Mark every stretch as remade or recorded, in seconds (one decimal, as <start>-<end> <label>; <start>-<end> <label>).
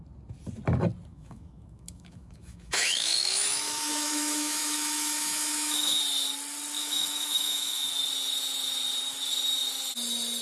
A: 0.0-1.1 recorded; 1.1-6.0 remade; 6.0-6.8 recorded; 6.8-7.9 remade; 7.9-10.4 recorded